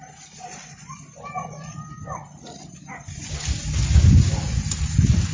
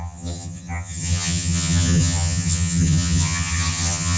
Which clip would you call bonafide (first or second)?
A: first